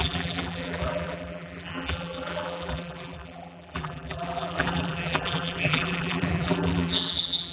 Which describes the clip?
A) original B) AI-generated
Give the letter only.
B